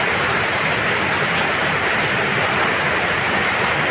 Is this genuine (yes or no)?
no